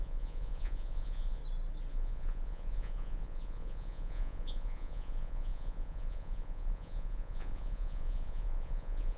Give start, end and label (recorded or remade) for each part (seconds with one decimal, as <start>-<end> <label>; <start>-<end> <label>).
0.0-1.4 remade; 1.4-1.9 recorded; 1.9-9.2 remade

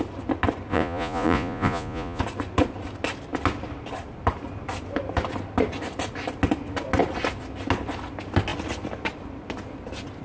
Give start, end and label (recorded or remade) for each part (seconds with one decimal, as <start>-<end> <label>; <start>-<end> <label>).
0.0-0.7 recorded; 0.7-2.2 remade; 2.2-10.2 recorded

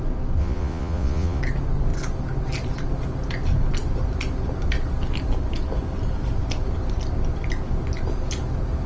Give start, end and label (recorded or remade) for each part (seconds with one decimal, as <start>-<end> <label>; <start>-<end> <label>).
0.0-0.4 recorded; 0.4-1.4 remade; 1.4-8.9 recorded

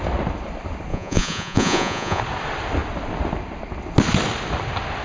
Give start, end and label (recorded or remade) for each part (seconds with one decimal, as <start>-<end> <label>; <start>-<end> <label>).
0.0-0.9 recorded; 0.9-2.2 remade; 2.2-5.0 recorded

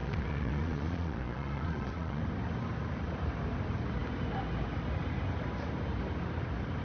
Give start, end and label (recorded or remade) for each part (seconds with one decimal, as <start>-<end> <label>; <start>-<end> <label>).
0.0-2.2 remade; 2.2-6.8 recorded

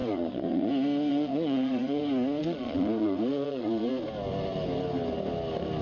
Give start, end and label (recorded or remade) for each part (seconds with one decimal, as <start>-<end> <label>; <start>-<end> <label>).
0.0-0.7 remade; 0.7-1.1 recorded; 1.1-2.0 remade; 2.0-2.4 recorded; 2.4-3.9 remade; 3.9-5.8 recorded

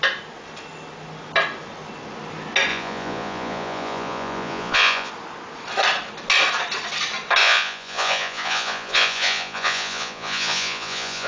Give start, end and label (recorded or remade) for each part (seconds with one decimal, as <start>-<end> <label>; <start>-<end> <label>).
0.0-2.7 recorded; 2.7-5.1 remade; 5.1-7.4 recorded; 7.4-11.3 remade